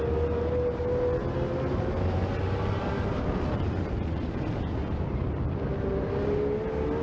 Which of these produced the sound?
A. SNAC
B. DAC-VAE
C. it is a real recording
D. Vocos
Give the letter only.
C